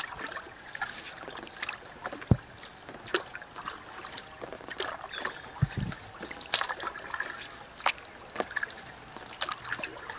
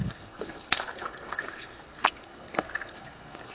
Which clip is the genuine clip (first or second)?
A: first